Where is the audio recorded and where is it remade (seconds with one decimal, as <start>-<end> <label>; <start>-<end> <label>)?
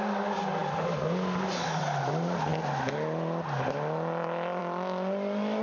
0.0-5.6 recorded